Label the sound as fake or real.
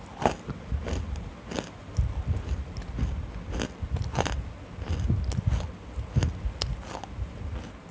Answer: real